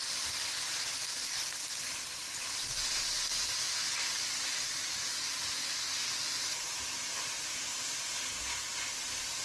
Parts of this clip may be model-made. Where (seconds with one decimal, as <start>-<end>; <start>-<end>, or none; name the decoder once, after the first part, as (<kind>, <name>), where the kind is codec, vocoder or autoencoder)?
none